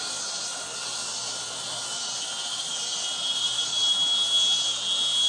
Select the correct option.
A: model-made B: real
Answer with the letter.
B